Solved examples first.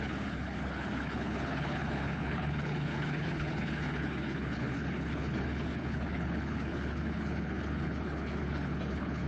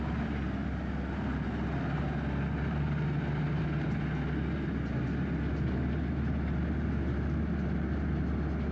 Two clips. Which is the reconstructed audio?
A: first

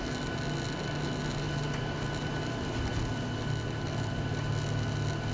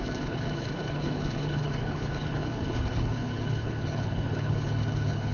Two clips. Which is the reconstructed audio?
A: second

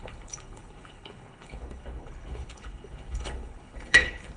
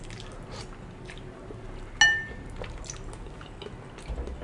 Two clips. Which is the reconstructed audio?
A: first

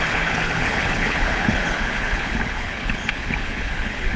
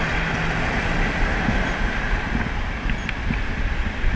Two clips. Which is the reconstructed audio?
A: first